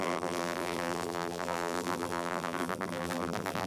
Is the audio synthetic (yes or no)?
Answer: yes